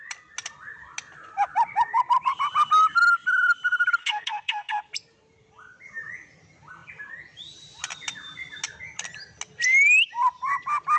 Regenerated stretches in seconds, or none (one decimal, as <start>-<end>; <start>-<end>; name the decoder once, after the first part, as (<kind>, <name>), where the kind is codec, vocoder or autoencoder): 4.0-4.7 (codec, SNAC)